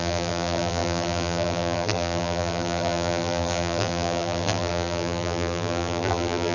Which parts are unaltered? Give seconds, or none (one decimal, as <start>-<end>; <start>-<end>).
none